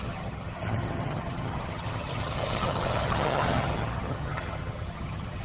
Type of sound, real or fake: fake